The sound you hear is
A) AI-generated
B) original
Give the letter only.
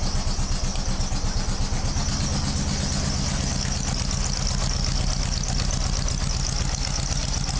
B